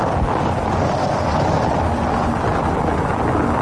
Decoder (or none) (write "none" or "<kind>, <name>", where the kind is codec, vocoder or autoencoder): none